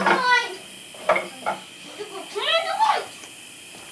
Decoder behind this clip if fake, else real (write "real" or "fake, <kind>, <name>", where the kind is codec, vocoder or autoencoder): real